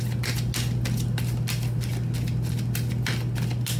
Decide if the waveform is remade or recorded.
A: recorded